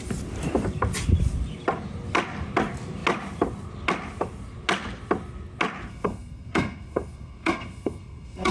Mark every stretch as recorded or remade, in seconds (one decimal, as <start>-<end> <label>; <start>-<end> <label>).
0.0-5.9 recorded; 5.9-8.5 remade